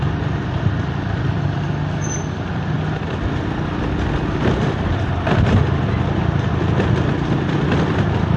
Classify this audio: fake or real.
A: real